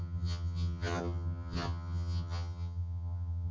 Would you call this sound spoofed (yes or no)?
yes